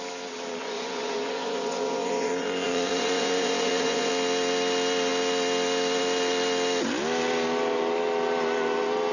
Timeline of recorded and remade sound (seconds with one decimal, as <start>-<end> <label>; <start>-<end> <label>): 0.0-0.6 recorded; 0.6-4.1 remade; 4.1-9.1 recorded